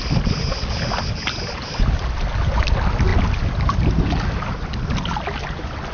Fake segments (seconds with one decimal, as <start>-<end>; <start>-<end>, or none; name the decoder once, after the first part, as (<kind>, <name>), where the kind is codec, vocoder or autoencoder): none